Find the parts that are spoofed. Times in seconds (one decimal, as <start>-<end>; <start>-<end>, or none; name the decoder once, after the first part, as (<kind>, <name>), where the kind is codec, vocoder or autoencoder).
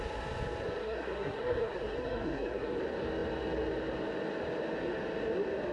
0.8-2.8 (codec, SNAC)